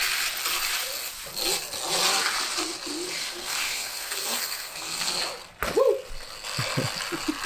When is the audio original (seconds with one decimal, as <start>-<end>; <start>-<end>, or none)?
0.0-3.2; 5.1-7.5